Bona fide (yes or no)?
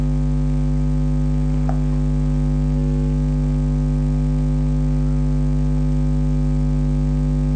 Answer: yes